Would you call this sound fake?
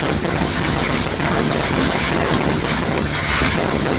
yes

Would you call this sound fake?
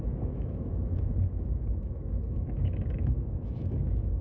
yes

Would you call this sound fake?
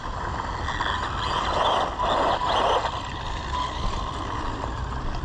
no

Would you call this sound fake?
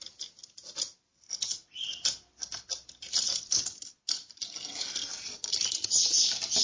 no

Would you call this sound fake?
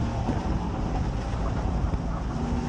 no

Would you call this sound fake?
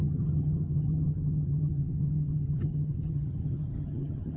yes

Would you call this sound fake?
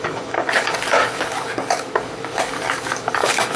yes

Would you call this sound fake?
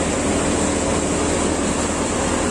no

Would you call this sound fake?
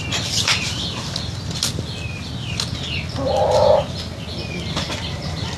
no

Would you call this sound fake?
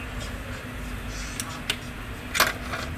no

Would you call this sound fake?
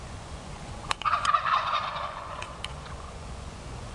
yes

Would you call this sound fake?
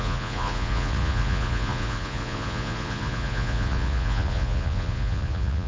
yes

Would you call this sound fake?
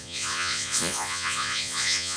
yes